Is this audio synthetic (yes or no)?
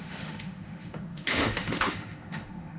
yes